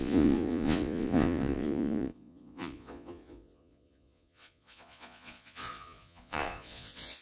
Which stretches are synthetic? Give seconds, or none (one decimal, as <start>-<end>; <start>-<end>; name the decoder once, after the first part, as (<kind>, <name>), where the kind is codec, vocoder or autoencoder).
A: 0.0-7.2 (vocoder, Vocos)